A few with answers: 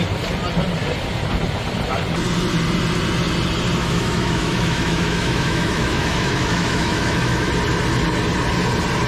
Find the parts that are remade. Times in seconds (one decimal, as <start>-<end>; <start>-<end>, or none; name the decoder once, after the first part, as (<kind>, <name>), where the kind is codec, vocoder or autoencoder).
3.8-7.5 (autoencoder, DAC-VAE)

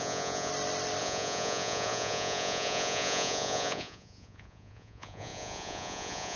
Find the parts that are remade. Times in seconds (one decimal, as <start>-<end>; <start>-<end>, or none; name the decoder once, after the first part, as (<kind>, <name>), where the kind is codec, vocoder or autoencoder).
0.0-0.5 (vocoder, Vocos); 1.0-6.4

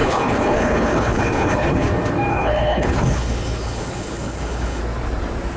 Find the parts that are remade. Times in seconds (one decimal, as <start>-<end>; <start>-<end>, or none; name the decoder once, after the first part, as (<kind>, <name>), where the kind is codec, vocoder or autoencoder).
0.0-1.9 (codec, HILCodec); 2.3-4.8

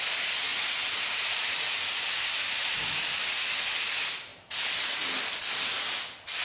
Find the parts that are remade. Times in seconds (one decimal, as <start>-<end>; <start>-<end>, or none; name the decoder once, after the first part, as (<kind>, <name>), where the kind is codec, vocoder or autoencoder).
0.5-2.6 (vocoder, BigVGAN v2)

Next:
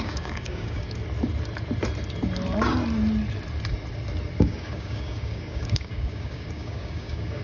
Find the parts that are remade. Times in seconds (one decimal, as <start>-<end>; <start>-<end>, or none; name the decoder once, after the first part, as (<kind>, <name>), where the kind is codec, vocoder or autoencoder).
0.0-1.0 (codec, DAC); 4.4-7.4

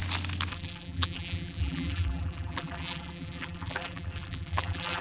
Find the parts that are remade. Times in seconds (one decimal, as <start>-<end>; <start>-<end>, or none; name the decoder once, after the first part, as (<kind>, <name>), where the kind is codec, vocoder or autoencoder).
0.5-5.0 (vocoder, BigVGAN v2)

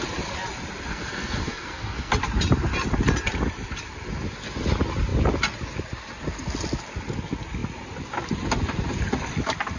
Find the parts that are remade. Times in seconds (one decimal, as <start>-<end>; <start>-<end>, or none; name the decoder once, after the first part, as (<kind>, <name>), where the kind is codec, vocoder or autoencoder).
0.9-2.1 (codec, SNAC)